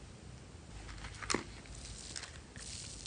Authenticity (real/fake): real